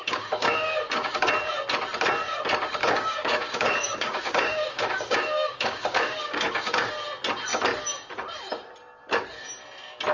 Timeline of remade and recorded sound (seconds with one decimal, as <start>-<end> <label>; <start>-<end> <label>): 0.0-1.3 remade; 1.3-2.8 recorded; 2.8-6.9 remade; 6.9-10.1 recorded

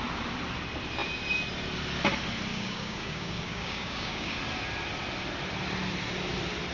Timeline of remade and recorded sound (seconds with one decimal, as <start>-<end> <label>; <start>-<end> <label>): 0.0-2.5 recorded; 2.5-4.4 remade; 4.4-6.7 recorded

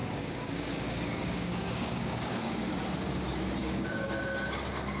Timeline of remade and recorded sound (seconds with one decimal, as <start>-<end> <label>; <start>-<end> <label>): 0.0-2.7 remade; 2.7-3.6 recorded; 3.6-4.2 remade; 4.2-5.0 recorded

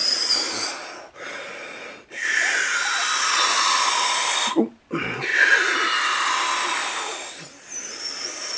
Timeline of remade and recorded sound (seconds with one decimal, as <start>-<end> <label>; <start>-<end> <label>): 0.0-8.6 recorded

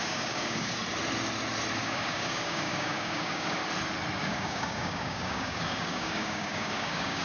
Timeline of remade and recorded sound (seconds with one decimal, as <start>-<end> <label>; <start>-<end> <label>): 0.0-0.8 remade; 0.8-1.8 recorded; 1.8-3.6 remade; 3.6-4.2 recorded; 4.2-7.2 remade

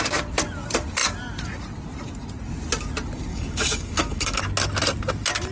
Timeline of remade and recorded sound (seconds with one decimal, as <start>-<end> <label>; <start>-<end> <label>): 0.0-3.3 recorded; 3.3-4.4 remade; 4.4-5.5 recorded